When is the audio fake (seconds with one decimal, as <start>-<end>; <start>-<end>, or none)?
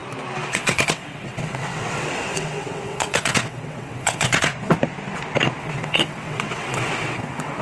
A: 0.5-4.5; 5.6-7.6